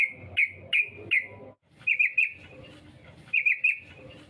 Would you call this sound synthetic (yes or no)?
no